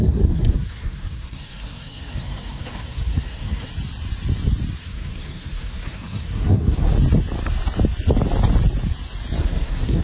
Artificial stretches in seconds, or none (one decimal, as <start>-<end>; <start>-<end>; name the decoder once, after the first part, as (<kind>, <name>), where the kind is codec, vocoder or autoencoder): 0.0-3.7 (codec, SNAC); 4.8-6.9; 9.4-10.0